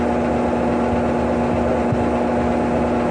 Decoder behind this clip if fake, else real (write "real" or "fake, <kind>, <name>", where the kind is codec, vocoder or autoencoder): real